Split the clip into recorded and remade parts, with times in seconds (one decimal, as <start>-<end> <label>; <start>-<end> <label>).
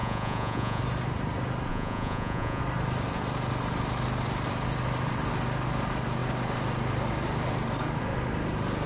0.0-0.8 remade; 0.8-1.7 recorded; 1.7-2.6 remade; 2.6-8.9 recorded